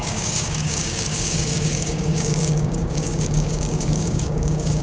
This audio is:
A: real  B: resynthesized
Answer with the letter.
B